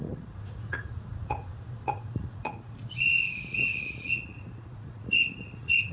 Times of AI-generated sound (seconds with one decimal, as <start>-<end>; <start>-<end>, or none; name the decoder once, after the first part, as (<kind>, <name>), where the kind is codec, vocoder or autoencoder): 0.0-5.9 (vocoder, Vocos)